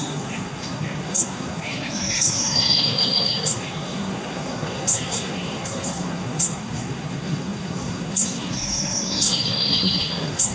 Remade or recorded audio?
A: remade